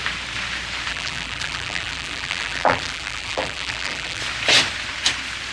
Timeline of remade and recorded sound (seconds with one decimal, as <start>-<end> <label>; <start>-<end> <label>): 0.0-0.9 recorded; 0.9-4.2 remade; 4.2-5.5 recorded